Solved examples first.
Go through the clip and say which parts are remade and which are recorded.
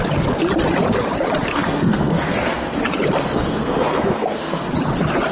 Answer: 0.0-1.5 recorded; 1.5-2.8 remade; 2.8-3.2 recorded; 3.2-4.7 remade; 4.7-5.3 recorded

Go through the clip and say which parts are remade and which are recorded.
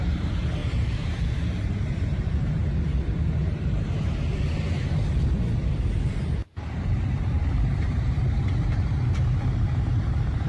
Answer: 0.0-10.5 remade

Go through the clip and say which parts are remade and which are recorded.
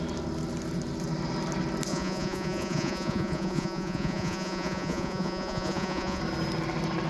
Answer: 0.0-1.9 recorded; 1.9-6.2 remade; 6.2-7.1 recorded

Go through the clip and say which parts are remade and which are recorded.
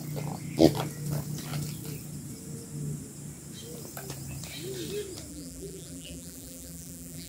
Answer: 0.0-5.3 recorded; 5.3-7.3 remade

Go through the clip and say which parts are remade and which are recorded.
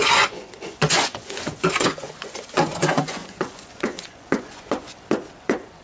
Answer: 0.0-5.8 remade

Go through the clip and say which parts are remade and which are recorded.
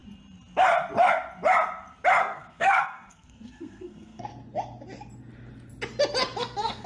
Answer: 0.0-2.2 recorded; 2.2-4.3 remade; 4.3-6.4 recorded; 6.4-6.9 remade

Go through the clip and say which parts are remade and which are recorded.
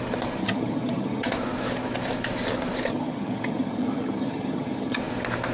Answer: 0.0-0.4 recorded; 0.4-1.3 remade; 1.3-2.9 recorded; 2.9-5.0 remade; 5.0-5.5 recorded